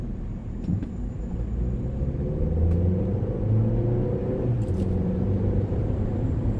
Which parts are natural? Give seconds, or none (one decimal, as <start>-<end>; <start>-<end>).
0.0-0.4; 1.3-4.2

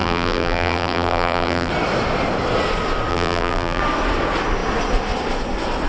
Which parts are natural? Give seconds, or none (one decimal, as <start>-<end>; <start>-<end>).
1.7-3.1; 3.8-5.9

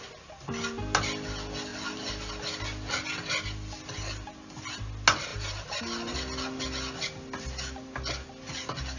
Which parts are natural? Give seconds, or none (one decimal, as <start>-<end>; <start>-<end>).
0.0-1.7; 2.3-5.3; 5.8-9.0

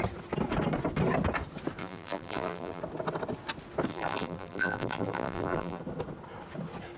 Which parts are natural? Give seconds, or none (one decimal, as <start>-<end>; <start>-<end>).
0.0-1.8; 2.8-3.9; 5.8-7.0

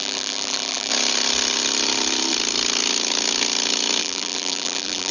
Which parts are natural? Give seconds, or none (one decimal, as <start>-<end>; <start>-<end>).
0.9-4.0

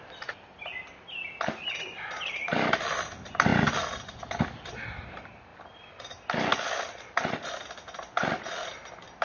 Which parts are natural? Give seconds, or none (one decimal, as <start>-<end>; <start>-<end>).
3.5-4.2; 5.5-7.3